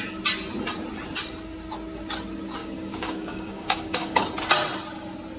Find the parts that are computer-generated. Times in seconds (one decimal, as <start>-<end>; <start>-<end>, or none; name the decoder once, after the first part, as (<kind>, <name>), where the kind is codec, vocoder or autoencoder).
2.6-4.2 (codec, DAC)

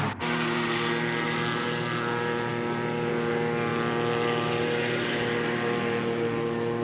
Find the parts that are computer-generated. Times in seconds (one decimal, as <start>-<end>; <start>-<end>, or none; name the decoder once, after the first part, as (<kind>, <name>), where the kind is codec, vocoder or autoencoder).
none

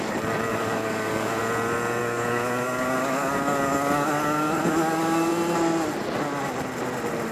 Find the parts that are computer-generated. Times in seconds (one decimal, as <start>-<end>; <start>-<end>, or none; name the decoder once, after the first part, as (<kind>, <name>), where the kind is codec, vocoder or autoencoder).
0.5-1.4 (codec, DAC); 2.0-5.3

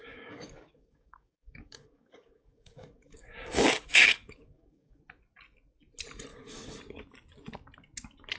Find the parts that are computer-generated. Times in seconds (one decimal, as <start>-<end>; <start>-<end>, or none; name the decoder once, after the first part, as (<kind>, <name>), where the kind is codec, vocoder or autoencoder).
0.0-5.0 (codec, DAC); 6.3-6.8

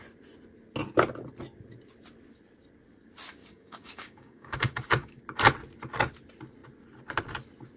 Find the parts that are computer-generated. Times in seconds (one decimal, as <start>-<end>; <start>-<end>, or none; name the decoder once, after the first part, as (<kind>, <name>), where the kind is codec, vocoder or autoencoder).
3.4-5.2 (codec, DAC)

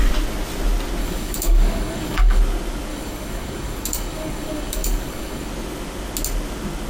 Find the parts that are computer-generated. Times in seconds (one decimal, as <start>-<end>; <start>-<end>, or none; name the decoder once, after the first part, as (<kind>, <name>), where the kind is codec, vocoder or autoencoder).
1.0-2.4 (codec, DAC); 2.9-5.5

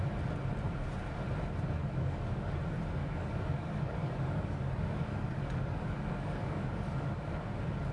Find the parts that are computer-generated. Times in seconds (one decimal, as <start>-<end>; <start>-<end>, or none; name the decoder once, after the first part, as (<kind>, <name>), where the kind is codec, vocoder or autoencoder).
1.8-2.6 (codec, DAC); 3.0-7.5